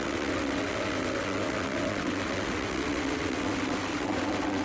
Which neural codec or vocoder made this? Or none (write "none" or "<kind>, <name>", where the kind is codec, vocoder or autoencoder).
vocoder, WaveNeXt